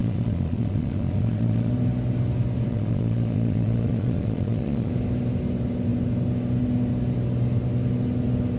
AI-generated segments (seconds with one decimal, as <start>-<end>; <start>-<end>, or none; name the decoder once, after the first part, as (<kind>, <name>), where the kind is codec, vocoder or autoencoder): 0.0-1.7 (vocoder, Vocos); 2.7-4.9